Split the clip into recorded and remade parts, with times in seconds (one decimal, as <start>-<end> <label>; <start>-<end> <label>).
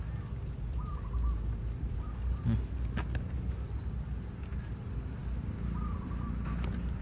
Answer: 0.0-7.0 recorded